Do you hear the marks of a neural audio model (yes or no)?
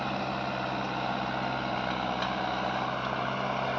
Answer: no